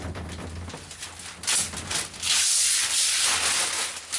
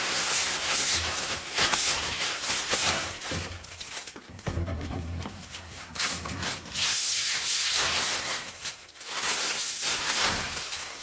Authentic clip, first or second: first